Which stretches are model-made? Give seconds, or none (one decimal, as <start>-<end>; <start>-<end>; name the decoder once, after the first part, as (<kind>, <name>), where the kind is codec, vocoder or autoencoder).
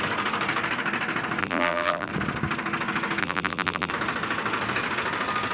1.4-2.1 (vocoder, BigVGAN v2); 3.2-3.9